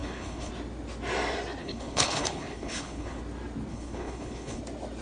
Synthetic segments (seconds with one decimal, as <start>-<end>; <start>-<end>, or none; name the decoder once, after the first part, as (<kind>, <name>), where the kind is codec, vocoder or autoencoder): 0.0-0.5 (codec, HILCodec); 1.6-3.2; 3.7-4.6